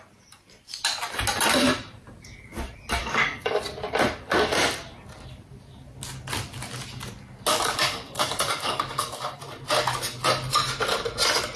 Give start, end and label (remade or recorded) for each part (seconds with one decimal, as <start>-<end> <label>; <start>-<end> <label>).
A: 0.0-3.0 recorded; 3.0-3.6 remade; 3.6-7.5 recorded; 7.5-9.4 remade; 9.4-11.6 recorded